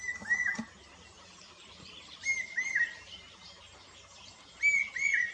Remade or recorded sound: recorded